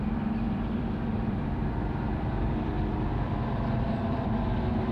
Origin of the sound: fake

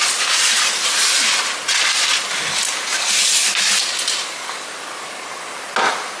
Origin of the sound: real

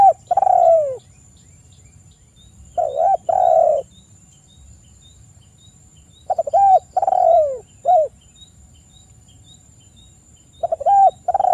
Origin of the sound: fake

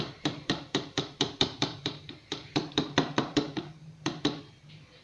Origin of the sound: fake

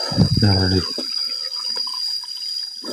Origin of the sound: real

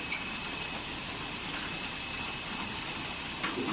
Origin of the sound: real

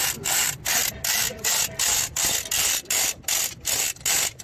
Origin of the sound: real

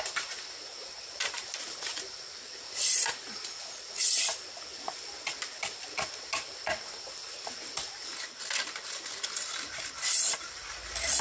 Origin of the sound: fake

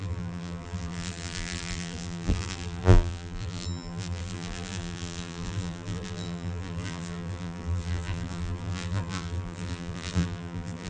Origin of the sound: fake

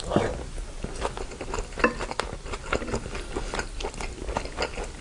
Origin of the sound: real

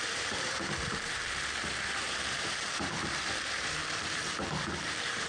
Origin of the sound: fake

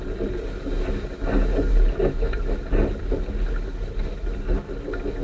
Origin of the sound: real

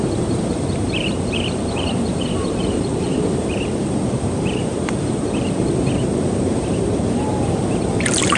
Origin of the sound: fake